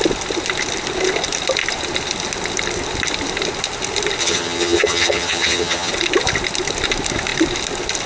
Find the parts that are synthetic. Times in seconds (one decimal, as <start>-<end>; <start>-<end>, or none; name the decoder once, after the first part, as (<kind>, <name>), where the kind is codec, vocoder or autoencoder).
4.2-5.9 (vocoder, HiFi-GAN)